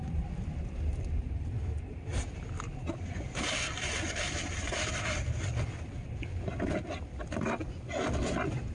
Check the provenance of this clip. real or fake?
real